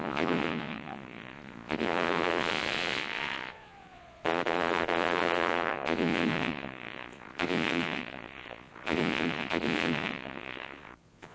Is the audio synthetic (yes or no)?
yes